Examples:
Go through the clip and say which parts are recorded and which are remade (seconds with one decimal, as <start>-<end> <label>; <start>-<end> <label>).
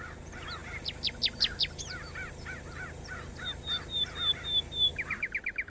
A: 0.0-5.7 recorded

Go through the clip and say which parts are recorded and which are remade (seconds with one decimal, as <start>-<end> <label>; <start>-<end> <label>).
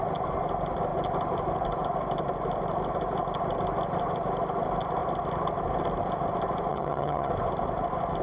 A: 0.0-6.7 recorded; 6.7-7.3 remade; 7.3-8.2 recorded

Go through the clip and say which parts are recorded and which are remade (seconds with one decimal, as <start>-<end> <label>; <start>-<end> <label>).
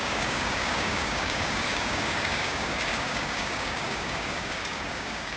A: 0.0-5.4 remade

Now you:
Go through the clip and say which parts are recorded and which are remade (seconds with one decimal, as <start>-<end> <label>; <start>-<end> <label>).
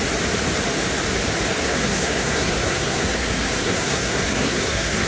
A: 0.0-1.6 recorded; 1.6-5.1 remade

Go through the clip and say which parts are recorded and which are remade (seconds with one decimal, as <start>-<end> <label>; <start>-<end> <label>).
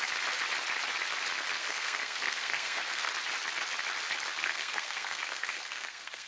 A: 0.0-1.6 recorded; 1.6-3.1 remade; 3.1-4.4 recorded; 4.4-6.3 remade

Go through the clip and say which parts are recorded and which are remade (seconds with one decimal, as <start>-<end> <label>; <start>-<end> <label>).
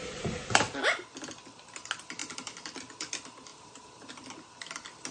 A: 0.0-5.1 recorded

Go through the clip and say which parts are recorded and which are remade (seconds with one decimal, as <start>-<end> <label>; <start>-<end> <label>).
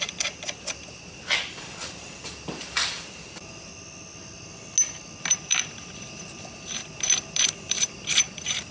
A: 0.0-3.7 remade; 3.7-5.2 recorded; 5.2-8.7 remade